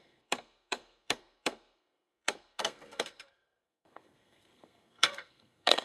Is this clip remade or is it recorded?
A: remade